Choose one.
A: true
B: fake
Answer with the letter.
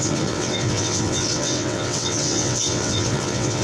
B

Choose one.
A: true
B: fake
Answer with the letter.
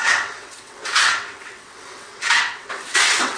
B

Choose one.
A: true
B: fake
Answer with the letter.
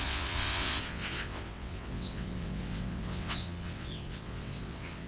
B